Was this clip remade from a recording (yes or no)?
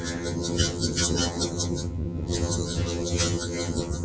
yes